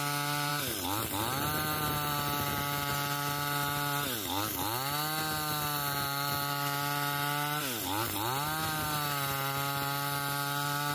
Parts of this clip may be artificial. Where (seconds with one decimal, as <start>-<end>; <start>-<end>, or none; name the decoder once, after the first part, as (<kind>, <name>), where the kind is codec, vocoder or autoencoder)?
none